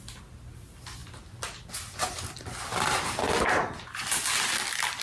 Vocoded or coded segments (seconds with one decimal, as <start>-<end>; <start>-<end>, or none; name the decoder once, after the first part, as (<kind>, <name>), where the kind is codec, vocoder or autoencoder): none